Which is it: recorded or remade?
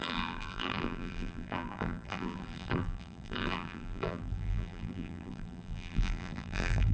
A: remade